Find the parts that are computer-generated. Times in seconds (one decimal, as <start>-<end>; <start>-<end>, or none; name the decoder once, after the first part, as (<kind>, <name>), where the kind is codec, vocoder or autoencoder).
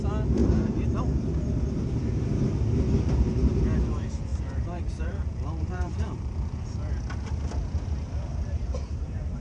0.4-1.0 (vocoder, BigVGAN v2); 4.3-6.9; 8.3-9.4